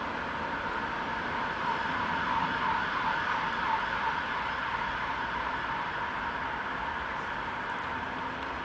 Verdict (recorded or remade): recorded